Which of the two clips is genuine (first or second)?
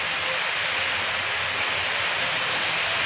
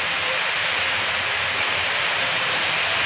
first